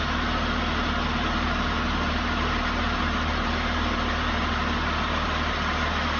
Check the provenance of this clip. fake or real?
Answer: real